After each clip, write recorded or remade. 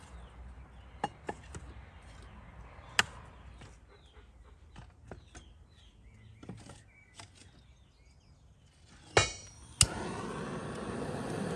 recorded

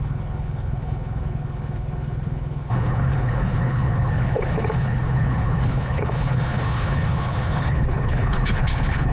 remade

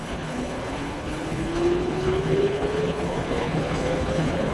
remade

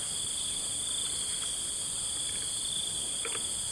recorded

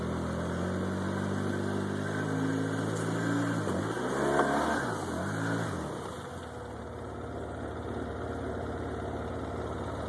recorded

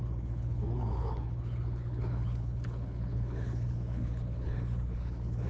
remade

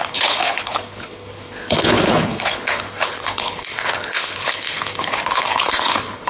remade